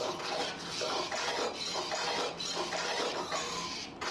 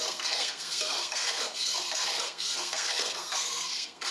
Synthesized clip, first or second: second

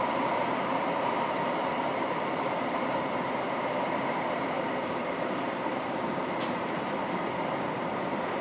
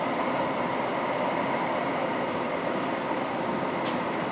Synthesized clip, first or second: first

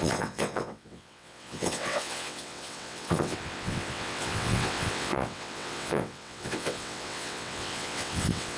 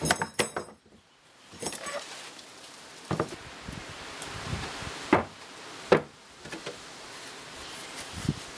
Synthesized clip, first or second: first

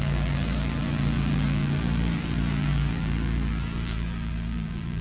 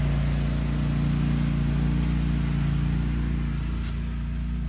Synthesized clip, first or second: first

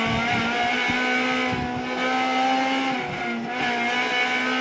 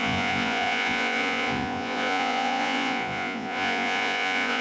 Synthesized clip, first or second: second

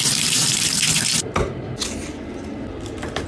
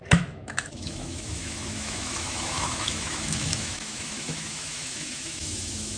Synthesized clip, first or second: second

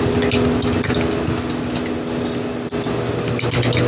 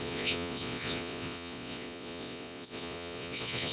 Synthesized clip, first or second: second